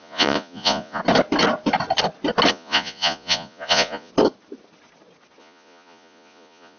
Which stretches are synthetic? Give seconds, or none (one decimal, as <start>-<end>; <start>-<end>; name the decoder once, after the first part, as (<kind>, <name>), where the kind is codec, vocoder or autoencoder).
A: 0.0-1.0 (vocoder, Vocos); 2.5-4.1; 5.4-6.8